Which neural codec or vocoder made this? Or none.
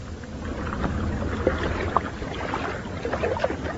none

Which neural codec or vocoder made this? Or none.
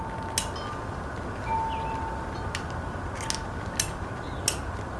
none